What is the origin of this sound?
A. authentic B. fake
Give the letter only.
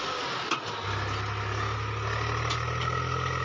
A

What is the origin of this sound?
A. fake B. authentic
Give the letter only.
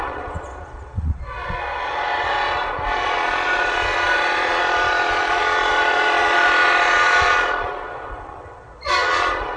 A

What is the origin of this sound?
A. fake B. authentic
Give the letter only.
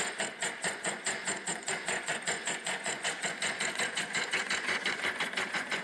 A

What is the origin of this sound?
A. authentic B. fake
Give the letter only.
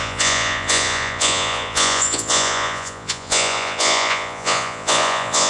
B